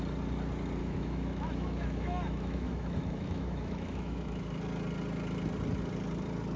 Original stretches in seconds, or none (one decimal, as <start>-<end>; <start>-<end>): 0.0-0.8; 4.4-6.6